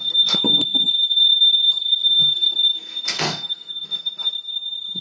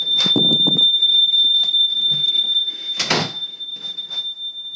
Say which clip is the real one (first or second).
second